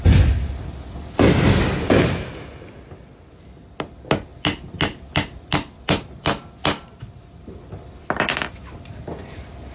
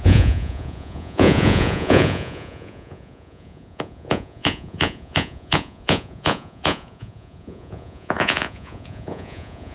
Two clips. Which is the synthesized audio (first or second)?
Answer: second